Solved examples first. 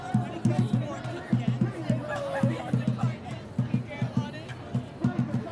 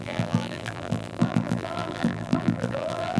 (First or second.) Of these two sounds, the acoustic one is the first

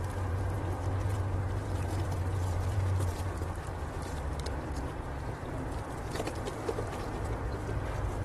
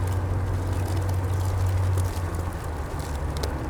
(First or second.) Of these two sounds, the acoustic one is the second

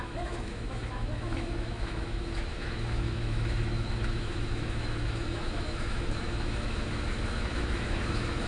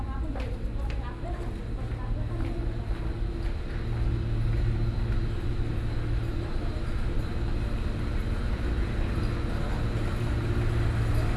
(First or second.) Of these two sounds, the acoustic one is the second